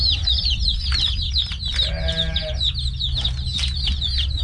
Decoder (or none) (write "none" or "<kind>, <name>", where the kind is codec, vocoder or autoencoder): none